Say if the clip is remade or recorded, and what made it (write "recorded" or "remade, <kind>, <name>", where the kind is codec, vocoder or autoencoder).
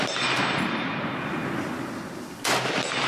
recorded